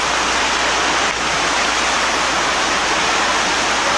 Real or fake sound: real